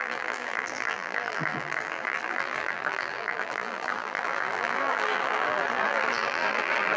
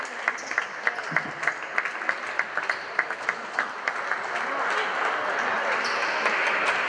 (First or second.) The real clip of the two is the second